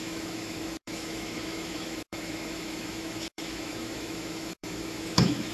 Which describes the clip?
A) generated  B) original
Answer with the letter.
A